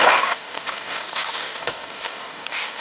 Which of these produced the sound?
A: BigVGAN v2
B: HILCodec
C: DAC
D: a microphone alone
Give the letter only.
C